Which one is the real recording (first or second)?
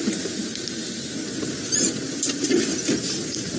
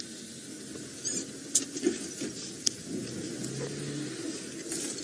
second